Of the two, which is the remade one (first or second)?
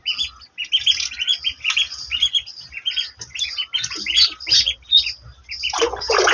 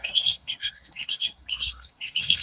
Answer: second